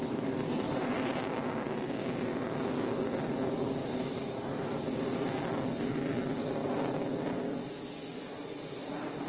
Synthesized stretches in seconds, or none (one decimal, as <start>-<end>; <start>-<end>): 0.0-1.2; 3.8-5.5